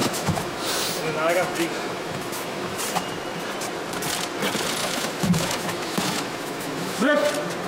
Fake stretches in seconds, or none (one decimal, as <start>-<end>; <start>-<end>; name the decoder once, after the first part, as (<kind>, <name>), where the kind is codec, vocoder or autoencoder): 0.0-2.8 (autoencoder, DAC-VAE); 4.8-7.3